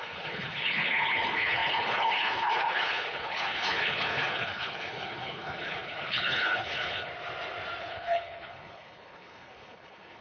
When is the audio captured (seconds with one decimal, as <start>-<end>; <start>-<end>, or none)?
7.1-7.8